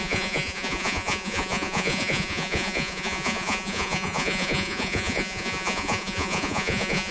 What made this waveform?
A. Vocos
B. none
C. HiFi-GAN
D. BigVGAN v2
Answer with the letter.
A